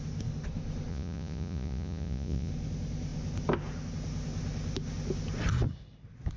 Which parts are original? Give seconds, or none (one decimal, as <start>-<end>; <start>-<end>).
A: 0.0-0.9; 2.5-6.4